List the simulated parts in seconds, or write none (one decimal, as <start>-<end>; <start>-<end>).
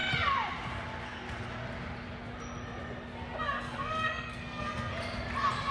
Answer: 3.4-4.9